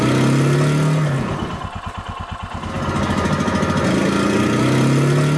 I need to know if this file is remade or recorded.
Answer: recorded